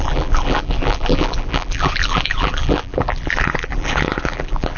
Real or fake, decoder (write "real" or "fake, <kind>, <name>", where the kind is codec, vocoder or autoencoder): fake, vocoder, BigVGAN v2